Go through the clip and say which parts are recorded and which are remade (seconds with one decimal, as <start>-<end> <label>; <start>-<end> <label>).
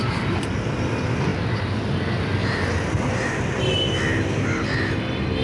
0.0-0.5 remade; 0.5-2.4 recorded; 2.4-3.3 remade; 3.3-5.4 recorded